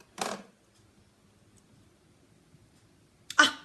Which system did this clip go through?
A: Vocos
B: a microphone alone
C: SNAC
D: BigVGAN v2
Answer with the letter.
B